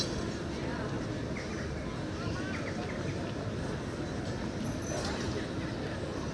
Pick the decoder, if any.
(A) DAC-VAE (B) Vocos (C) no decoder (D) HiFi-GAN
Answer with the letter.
C